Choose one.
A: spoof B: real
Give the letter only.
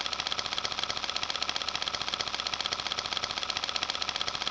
B